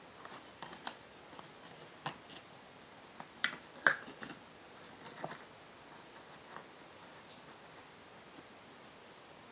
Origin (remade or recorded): recorded